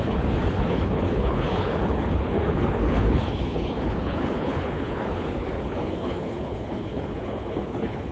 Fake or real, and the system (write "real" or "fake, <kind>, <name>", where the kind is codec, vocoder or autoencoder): fake, codec, HILCodec